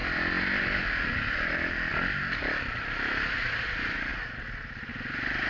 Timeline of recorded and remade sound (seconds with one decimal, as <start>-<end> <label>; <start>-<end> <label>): 0.0-5.5 recorded